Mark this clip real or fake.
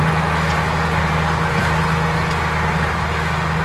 real